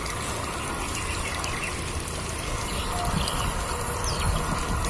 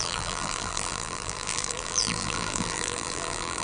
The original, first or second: first